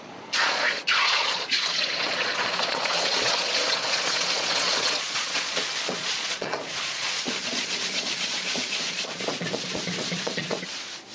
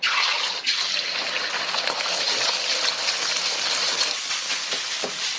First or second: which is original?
second